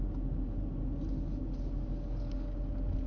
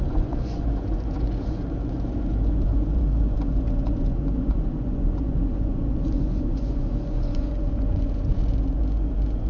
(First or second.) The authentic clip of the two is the first